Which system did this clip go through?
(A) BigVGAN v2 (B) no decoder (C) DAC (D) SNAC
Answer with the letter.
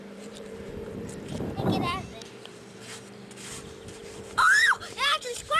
A